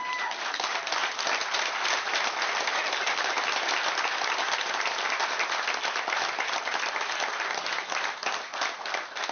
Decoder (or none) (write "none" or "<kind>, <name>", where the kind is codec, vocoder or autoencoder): none